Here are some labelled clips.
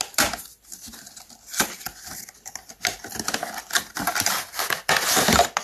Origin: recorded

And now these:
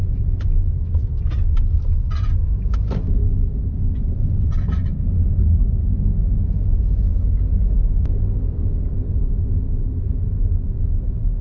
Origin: recorded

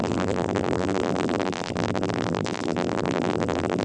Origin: remade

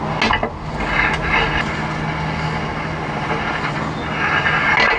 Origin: recorded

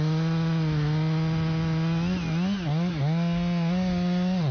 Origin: recorded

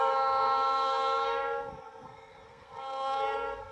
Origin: remade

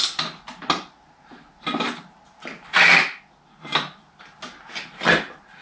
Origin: recorded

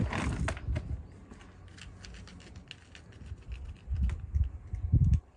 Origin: recorded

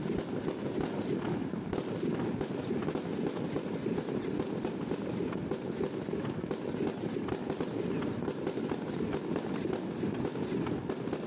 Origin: recorded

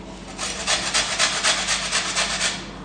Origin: recorded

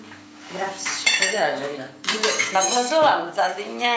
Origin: remade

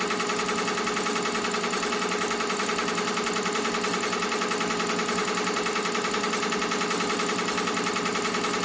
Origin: recorded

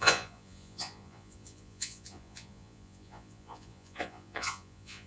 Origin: remade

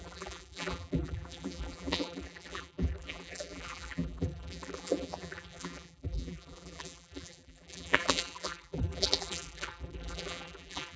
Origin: remade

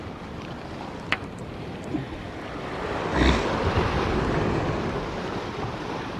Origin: remade